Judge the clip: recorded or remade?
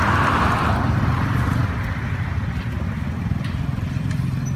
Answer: recorded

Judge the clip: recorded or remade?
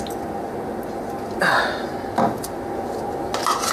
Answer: recorded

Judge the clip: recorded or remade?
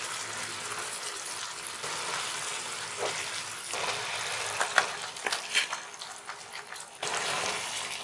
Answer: remade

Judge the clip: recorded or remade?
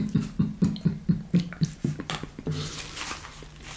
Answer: recorded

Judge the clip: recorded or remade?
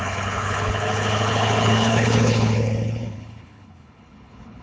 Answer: remade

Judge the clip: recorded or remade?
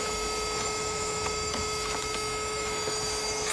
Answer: remade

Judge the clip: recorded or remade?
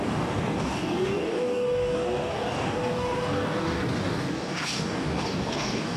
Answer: remade